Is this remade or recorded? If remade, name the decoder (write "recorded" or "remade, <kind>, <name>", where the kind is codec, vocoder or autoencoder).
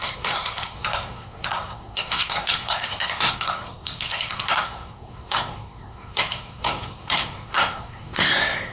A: remade, codec, SNAC